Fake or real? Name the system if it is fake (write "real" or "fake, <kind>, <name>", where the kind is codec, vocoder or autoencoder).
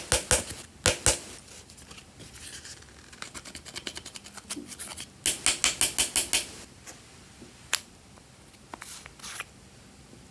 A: real